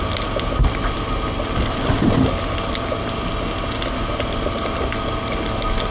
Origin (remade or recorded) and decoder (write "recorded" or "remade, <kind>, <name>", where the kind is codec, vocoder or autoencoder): recorded